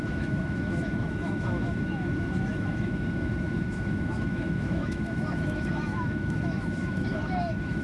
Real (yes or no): no